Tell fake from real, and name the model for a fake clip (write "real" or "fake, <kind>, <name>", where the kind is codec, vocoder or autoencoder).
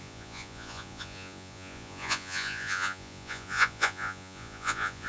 fake, vocoder, Vocos